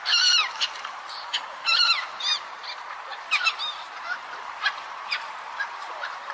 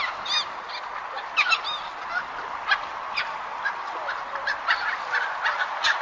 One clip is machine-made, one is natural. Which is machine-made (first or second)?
first